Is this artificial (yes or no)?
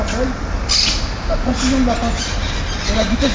no